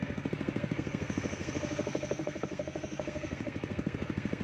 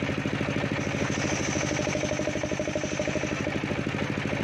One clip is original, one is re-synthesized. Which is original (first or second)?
second